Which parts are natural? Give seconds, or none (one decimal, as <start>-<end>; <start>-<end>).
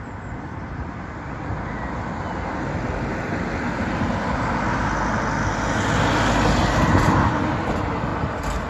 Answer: 0.0-8.7